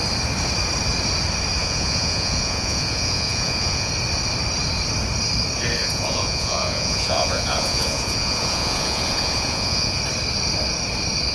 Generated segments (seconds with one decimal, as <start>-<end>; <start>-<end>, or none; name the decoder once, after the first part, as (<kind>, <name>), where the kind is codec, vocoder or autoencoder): 1.6-3.9 (vocoder, Vocos); 5.8-10.0